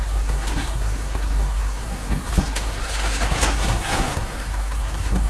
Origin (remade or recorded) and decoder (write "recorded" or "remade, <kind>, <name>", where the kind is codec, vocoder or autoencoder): remade, codec, SNAC